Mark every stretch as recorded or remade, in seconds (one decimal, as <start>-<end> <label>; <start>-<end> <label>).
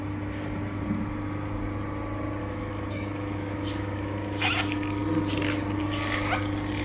0.0-2.4 recorded; 2.4-4.5 remade; 4.5-6.8 recorded